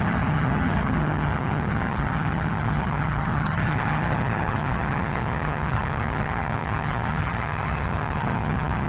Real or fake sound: fake